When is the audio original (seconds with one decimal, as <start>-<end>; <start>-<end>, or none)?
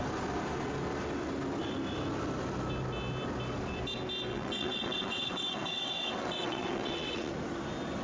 0.0-4.3; 7.3-8.0